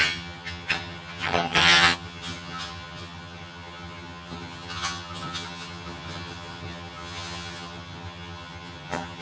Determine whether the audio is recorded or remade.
remade